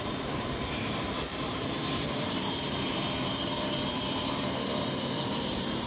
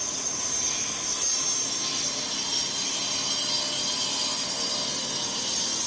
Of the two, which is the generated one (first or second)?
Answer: first